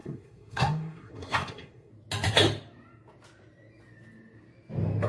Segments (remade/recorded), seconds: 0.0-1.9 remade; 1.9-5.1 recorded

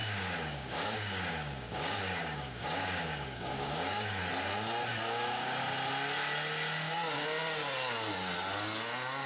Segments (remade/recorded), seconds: 0.0-4.2 remade; 4.2-4.9 recorded; 4.9-5.6 remade; 5.6-9.3 recorded

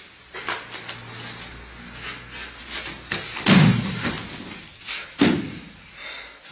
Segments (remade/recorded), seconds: 0.0-6.5 recorded

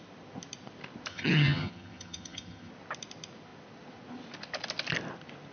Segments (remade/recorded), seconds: 0.0-1.1 recorded; 1.1-2.7 remade; 2.7-5.5 recorded